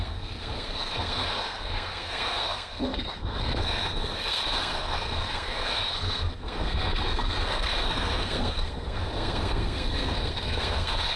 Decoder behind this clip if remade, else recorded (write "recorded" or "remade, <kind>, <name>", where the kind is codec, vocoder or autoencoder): remade, codec, SNAC